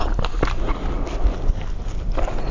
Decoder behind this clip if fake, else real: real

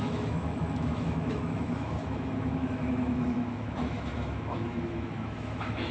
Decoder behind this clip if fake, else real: fake, autoencoder, DAC-VAE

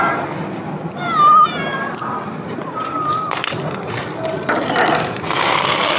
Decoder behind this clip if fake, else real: real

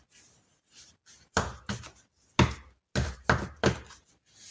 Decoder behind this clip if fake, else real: real